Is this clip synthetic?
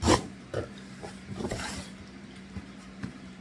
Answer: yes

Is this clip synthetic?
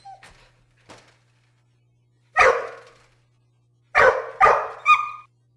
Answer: no